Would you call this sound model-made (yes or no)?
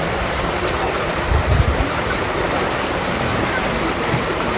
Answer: yes